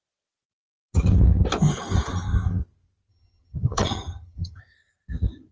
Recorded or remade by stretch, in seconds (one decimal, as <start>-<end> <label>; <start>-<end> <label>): 0.0-3.1 recorded; 3.1-4.6 remade; 4.6-5.5 recorded